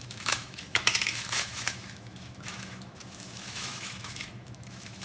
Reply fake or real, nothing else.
fake